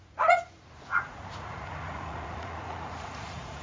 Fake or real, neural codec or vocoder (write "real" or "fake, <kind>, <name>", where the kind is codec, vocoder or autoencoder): fake, vocoder, Vocos